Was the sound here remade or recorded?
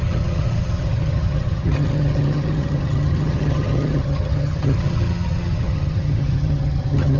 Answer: remade